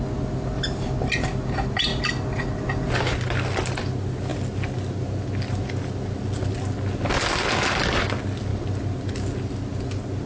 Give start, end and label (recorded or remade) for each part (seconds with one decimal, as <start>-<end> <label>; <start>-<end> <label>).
0.0-10.3 recorded